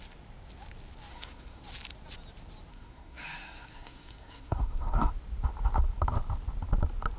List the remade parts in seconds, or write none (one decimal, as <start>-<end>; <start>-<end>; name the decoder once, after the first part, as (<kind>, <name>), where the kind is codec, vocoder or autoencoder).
1.1-1.6 (codec, SNAC); 2.7-5.1